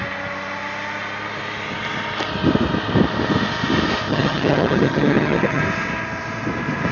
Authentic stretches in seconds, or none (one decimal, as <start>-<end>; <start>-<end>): 0.0-4.1; 5.6-6.9